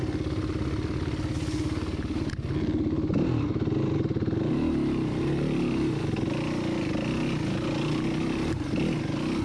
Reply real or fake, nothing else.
real